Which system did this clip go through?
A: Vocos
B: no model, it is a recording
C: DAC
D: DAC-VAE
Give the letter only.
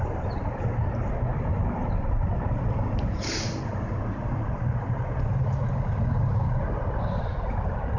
B